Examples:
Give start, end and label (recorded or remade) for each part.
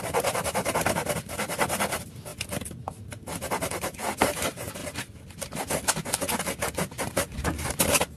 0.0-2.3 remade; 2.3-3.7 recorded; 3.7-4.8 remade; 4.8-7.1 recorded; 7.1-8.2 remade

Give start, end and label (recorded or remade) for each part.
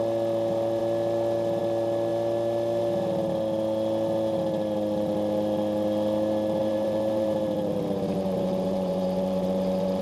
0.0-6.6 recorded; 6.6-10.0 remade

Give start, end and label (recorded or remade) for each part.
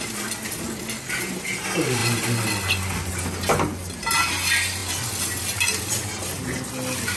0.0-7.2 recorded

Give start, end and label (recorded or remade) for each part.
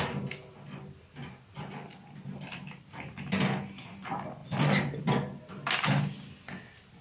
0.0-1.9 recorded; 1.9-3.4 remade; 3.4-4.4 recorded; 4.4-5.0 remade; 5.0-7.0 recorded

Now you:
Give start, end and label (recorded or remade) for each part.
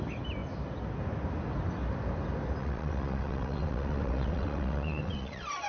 0.0-2.6 recorded; 2.6-5.7 remade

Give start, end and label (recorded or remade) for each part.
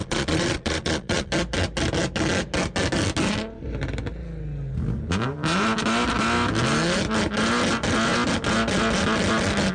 0.0-1.3 remade; 1.3-9.7 recorded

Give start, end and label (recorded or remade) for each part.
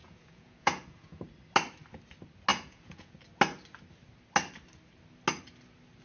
0.0-1.2 remade; 1.2-2.5 recorded; 2.5-3.1 remade; 3.1-6.0 recorded